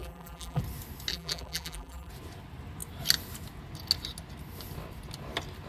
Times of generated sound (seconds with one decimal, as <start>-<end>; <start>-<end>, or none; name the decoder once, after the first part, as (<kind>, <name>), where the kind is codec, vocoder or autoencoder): 0.0-0.6 (vocoder, BigVGAN v2); 1.1-2.1